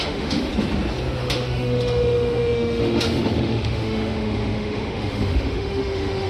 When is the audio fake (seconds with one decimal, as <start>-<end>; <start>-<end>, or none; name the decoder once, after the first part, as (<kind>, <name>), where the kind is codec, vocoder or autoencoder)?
0.0-0.5 (autoencoder, DAC-VAE); 1.2-6.3